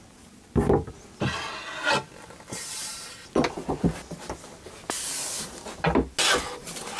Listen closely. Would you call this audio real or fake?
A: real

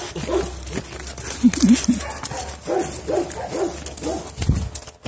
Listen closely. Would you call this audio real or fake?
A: real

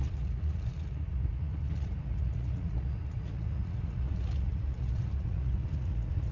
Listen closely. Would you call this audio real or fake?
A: fake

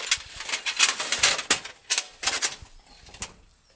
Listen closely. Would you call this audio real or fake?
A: real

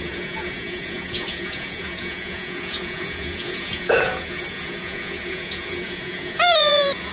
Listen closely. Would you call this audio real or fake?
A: fake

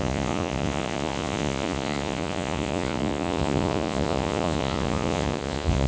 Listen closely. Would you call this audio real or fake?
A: fake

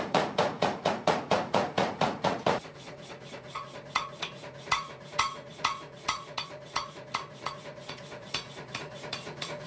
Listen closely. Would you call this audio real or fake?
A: fake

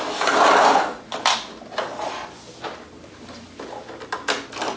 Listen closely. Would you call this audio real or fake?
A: real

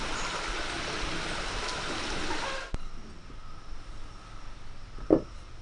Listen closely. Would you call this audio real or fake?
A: real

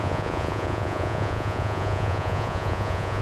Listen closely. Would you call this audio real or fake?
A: fake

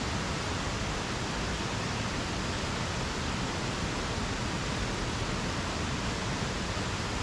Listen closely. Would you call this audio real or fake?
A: real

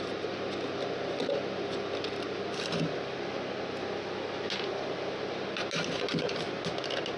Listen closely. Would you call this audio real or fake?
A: real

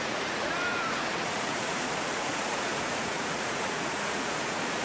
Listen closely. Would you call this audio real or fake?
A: fake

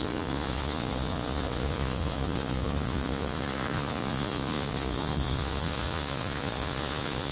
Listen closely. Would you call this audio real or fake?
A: fake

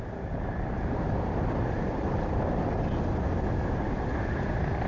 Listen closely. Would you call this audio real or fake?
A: real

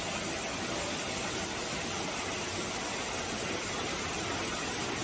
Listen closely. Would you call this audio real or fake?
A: real